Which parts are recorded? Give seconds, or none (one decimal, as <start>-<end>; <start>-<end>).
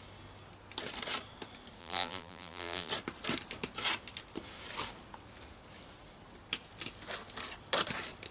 0.0-1.8; 2.9-8.3